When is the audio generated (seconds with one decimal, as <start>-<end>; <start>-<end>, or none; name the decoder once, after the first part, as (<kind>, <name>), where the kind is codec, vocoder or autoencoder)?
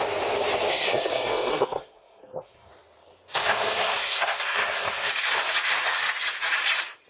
0.7-2.7 (codec, SNAC); 3.4-5.1